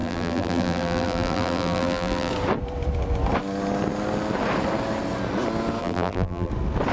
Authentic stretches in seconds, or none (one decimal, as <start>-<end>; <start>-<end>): 2.3-5.8; 6.5-6.9